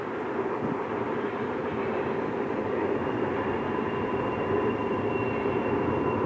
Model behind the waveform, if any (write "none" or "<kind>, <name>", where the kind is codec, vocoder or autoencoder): none